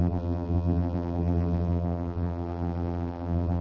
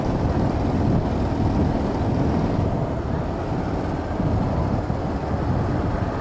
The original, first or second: second